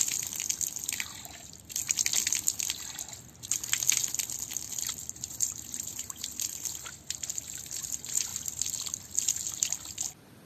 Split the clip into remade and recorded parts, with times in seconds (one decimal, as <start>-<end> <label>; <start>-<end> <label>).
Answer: 0.0-0.5 remade; 0.5-5.0 recorded; 5.0-8.3 remade; 8.3-10.1 recorded; 10.1-10.5 remade